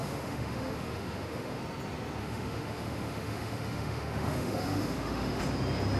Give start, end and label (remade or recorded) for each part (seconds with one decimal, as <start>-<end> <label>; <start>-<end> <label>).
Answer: 0.0-1.6 remade; 1.6-2.2 recorded; 2.2-5.4 remade; 5.4-6.0 recorded

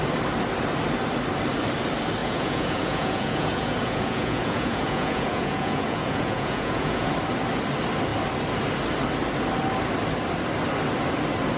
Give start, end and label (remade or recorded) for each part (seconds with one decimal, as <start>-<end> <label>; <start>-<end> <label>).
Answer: 0.0-2.2 recorded; 2.2-7.1 remade; 7.1-11.6 recorded